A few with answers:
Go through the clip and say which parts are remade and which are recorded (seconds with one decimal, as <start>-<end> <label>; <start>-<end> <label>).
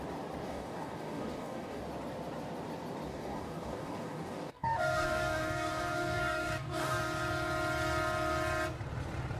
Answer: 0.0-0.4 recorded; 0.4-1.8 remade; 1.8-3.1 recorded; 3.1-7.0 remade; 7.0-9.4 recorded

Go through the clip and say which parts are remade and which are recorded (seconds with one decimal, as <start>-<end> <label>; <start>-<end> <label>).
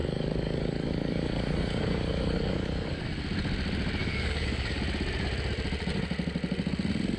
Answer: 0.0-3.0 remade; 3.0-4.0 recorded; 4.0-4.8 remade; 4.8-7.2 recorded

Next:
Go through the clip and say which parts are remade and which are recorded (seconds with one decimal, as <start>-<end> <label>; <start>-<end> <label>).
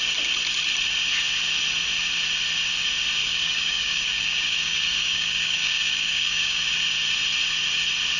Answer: 0.0-3.2 recorded; 3.2-6.6 remade; 6.6-8.2 recorded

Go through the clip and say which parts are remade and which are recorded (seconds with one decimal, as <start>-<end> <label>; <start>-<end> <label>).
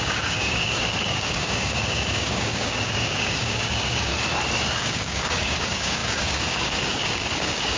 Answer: 0.0-4.1 remade; 4.1-4.7 recorded; 4.7-7.8 remade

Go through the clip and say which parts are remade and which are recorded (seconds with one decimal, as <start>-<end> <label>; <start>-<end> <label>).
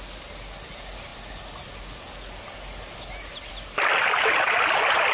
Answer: 0.0-5.1 recorded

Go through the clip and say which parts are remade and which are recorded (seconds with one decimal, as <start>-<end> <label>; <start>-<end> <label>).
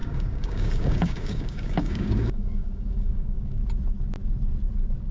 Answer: 0.0-3.6 remade; 3.6-5.1 recorded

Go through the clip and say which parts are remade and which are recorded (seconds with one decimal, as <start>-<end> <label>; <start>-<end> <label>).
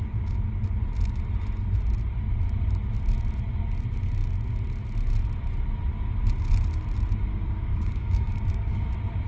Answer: 0.0-7.3 recorded; 7.3-8.9 remade; 8.9-9.3 recorded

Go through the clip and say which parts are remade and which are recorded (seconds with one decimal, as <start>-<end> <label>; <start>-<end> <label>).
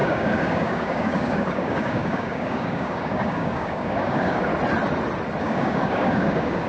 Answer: 0.0-4.5 remade; 4.5-5.4 recorded; 5.4-6.7 remade